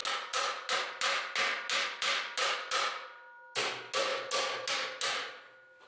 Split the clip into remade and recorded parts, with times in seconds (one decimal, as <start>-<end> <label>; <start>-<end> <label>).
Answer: 0.0-5.9 recorded